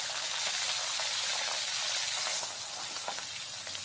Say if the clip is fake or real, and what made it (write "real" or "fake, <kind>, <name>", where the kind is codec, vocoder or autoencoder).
real